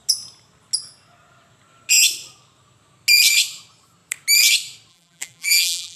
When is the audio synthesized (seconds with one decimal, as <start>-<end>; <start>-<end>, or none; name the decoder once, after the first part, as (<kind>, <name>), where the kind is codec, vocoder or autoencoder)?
4.9-6.0 (vocoder, BigVGAN v2)